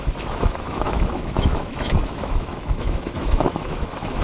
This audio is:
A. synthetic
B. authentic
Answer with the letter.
A